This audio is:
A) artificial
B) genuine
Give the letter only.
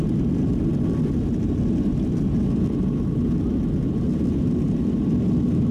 B